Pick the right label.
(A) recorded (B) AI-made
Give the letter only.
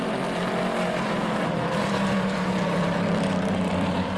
B